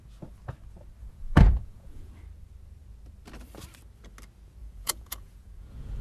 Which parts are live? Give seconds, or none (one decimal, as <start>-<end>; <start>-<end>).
0.0-1.0; 2.1-4.6